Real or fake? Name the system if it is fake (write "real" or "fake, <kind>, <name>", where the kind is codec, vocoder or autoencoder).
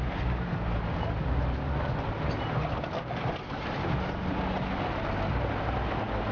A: real